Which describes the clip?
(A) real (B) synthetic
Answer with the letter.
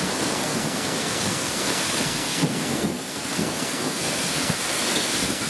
B